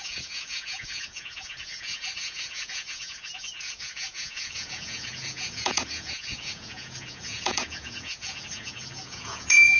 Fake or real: fake